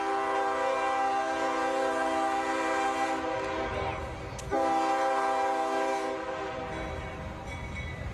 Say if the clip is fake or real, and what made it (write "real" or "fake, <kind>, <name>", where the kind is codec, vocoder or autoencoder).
real